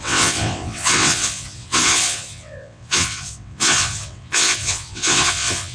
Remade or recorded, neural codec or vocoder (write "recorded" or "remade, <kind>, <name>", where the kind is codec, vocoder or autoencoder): remade, vocoder, WaveNeXt